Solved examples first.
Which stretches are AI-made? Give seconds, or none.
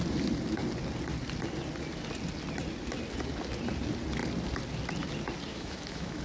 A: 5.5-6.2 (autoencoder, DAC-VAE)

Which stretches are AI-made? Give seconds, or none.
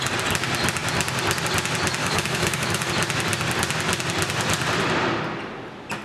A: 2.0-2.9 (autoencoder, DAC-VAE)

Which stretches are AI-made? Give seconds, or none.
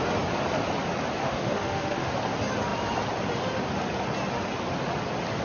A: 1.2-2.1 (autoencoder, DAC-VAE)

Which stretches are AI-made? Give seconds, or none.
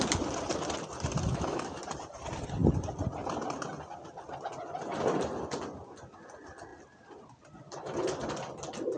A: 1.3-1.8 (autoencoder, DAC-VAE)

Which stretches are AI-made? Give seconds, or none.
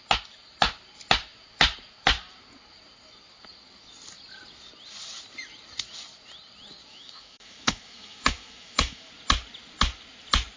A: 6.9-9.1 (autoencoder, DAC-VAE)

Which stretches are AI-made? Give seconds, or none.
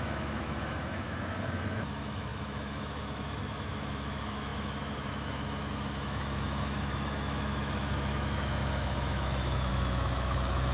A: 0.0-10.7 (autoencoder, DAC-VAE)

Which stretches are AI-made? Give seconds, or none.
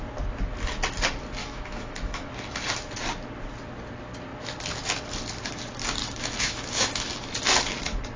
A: 1.4-2.3 (autoencoder, DAC-VAE); 6.0-7.1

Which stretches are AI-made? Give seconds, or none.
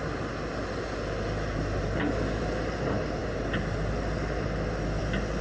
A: none